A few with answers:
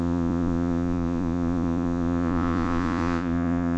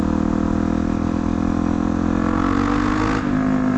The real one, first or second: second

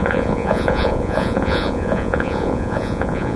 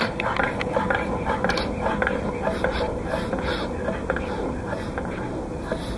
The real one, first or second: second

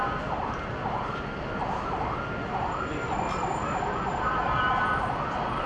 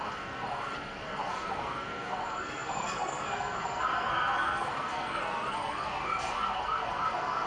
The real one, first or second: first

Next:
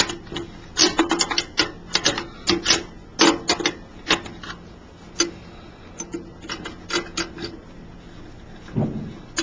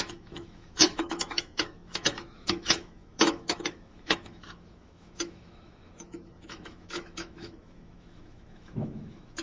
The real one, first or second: first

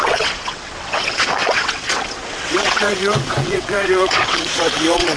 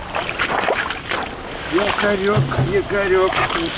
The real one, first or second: second